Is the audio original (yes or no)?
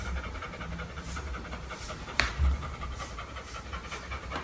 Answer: no